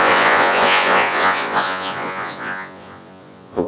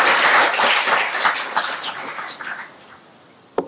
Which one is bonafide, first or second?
second